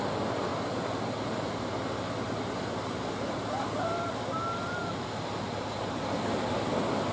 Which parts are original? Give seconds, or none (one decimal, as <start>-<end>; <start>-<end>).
0.0-7.1